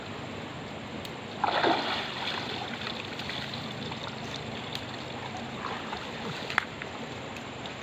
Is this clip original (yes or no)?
yes